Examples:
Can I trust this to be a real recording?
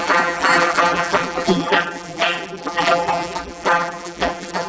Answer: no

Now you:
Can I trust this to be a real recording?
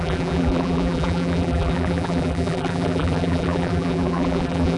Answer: no